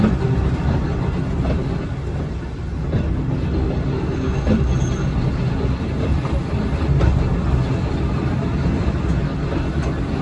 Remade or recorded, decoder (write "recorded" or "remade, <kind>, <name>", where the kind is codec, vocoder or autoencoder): recorded